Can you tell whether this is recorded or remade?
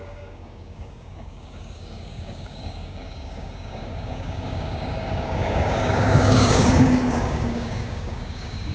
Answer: remade